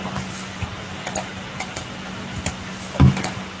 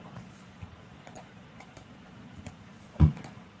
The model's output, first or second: second